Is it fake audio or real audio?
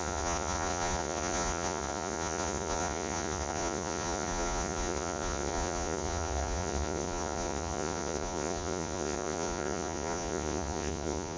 fake